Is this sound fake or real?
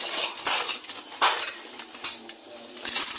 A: real